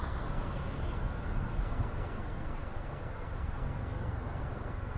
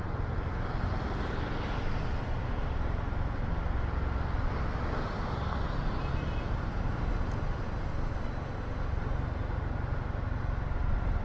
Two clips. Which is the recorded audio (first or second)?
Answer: second